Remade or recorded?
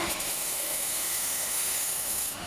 remade